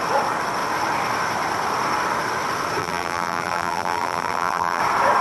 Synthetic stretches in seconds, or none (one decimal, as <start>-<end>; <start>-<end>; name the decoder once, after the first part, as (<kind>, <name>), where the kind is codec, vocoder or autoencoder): 2.8-4.8 (vocoder, BigVGAN v2)